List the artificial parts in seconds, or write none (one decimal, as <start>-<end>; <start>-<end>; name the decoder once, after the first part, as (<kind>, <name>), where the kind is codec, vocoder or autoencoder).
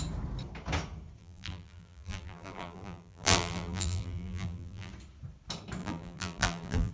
1.2-4.9 (vocoder, BigVGAN v2); 5.8-6.9